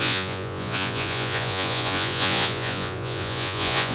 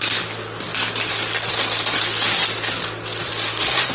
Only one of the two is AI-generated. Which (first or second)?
first